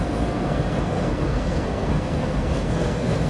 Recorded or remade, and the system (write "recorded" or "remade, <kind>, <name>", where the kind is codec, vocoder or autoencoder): remade, codec, SNAC